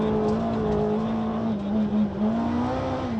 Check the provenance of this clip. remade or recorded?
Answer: recorded